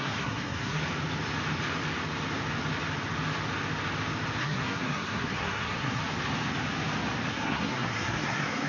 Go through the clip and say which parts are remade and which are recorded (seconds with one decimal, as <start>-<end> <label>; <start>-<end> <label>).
0.0-0.8 remade; 0.8-4.4 recorded; 4.4-6.0 remade; 6.0-7.3 recorded; 7.3-8.7 remade

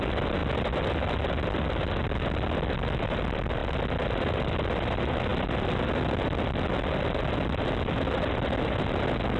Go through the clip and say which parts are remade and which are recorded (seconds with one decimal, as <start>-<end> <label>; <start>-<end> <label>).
0.0-9.4 recorded

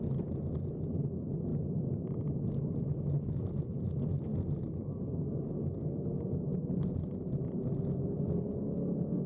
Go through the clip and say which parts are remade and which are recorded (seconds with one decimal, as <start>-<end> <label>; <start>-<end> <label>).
0.0-9.3 recorded

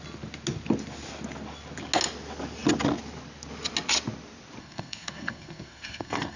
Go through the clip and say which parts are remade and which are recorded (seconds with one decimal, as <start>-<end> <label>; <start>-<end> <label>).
0.0-4.6 recorded; 4.6-6.4 remade

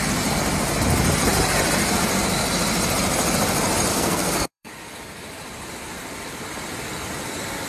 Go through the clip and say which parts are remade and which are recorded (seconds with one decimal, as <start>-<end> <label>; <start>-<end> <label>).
0.0-3.9 recorded; 3.9-4.7 remade; 4.7-7.7 recorded

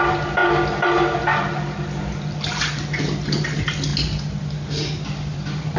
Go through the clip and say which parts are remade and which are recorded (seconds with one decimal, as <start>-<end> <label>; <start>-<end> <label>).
0.0-5.8 recorded

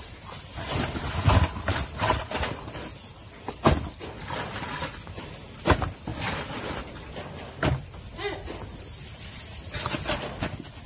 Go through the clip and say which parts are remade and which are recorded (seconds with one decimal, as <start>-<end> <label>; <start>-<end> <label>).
0.0-10.9 recorded

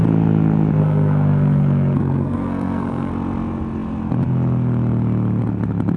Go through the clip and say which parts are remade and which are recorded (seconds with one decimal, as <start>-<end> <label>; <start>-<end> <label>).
0.0-0.8 recorded; 0.8-3.1 remade; 3.1-6.0 recorded